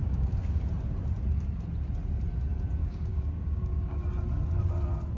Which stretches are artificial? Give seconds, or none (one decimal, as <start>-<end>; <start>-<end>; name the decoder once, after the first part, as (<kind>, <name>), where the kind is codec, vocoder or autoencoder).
0.0-0.6 (codec, DAC); 2.8-4.0